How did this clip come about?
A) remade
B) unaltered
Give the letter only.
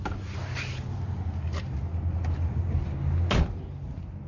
B